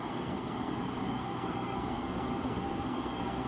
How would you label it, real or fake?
fake